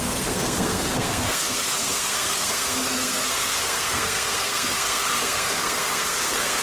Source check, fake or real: fake